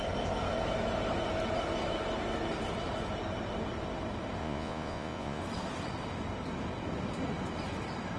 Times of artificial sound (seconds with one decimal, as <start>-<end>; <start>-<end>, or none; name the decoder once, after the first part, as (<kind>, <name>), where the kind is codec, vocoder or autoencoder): 4.4-5.4 (vocoder, Vocos)